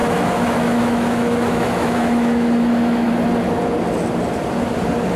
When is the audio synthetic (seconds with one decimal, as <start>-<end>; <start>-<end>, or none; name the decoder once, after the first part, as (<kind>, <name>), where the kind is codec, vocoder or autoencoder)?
0.0-3.1 (autoencoder, DAC-VAE)